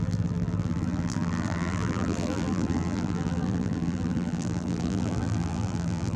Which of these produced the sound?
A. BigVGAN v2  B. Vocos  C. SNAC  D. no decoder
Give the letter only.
A